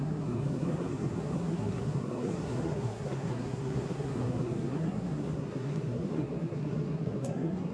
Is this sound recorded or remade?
remade